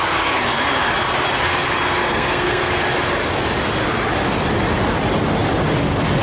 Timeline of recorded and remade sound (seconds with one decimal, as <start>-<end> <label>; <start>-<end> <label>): 0.0-2.0 recorded; 2.0-2.7 remade; 2.7-6.2 recorded